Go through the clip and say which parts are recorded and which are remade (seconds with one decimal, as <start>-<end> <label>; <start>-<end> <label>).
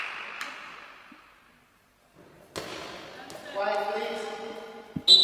0.0-5.2 recorded